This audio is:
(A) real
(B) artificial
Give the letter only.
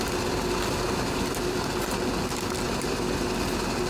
A